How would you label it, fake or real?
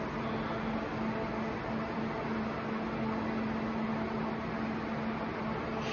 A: real